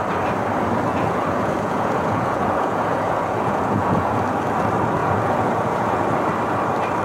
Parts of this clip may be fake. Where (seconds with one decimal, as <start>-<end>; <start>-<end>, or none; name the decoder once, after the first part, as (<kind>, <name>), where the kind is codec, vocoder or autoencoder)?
0.9-4.2 (vocoder, Vocos); 5.0-6.0